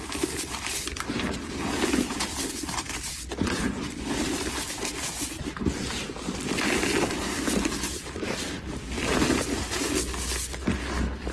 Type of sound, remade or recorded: recorded